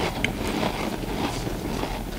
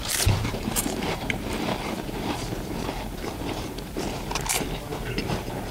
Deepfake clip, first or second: second